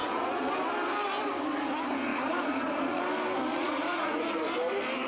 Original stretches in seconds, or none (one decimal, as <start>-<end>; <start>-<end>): 0.5-2.1; 3.0-3.5; 4.2-5.1